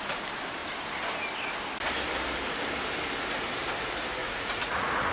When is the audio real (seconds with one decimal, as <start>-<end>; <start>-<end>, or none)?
0.0-4.2